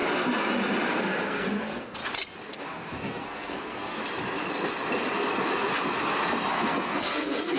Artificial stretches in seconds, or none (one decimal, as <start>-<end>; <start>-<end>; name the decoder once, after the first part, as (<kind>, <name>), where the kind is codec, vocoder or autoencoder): 0.9-2.0 (codec, SNAC); 2.5-4.0; 6.5-7.6